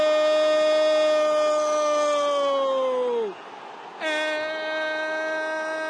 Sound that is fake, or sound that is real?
real